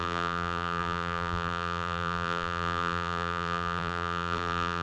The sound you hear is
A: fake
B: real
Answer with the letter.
A